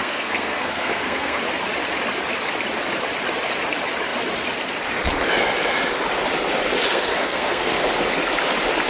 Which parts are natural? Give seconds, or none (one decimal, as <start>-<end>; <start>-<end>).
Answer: 1.4-6.9; 7.7-8.9